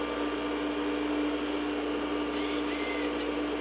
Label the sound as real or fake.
real